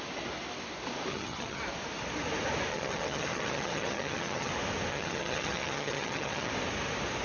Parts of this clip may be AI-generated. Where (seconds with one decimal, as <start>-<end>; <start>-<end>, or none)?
1.1-1.6; 2.7-4.5; 4.9-6.5